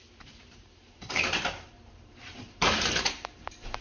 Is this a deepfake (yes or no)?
yes